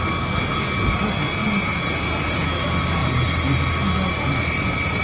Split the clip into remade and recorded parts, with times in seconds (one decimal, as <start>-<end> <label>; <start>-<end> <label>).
0.0-5.0 recorded